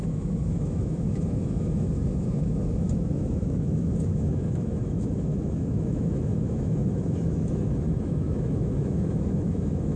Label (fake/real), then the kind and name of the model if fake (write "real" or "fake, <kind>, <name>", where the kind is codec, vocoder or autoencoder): fake, autoencoder, DAC-VAE